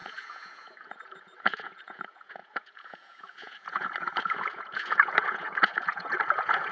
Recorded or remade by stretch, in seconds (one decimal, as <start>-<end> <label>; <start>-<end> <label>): 0.0-6.7 remade